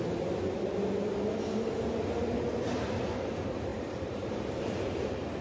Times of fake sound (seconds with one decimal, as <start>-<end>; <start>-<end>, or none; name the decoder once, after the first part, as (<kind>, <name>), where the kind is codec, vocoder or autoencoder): 3.7-5.4 (vocoder, BigVGAN v2)